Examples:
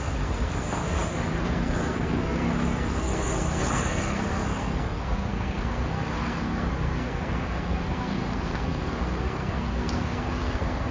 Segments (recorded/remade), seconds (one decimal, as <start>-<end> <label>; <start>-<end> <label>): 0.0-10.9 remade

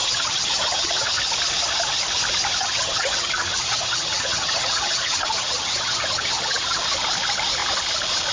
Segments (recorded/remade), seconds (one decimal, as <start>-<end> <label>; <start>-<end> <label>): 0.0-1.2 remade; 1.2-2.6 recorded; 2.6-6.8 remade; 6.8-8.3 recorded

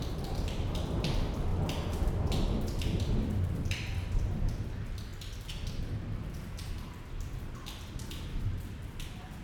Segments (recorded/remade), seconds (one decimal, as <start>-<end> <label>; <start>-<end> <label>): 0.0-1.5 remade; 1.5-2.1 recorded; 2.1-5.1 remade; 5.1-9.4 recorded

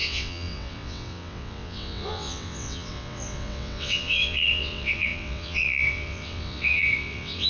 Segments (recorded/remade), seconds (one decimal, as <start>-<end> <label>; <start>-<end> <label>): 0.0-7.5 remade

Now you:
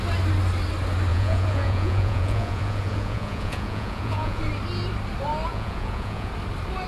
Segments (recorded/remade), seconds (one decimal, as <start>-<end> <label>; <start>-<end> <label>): 0.0-1.1 recorded; 1.1-4.4 remade; 4.4-5.5 recorded; 5.5-6.3 remade; 6.3-6.9 recorded